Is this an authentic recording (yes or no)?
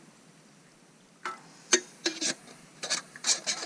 yes